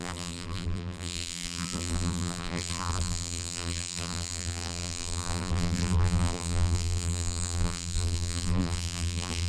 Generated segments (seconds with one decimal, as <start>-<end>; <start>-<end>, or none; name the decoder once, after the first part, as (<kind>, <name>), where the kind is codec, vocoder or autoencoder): 0.0-9.5 (vocoder, BigVGAN v2)